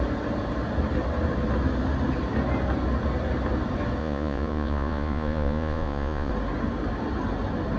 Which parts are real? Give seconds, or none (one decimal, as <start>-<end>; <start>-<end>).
0.0-4.0; 6.3-7.8